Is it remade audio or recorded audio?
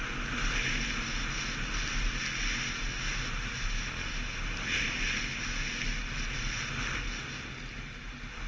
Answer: recorded